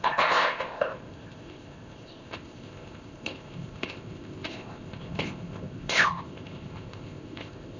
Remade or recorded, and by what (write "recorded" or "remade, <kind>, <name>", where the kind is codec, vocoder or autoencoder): remade, codec, ZipCodec